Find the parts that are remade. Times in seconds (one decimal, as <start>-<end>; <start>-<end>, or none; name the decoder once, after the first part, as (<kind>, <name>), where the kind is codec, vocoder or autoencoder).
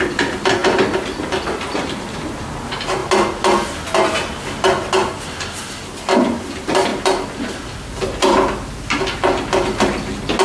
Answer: none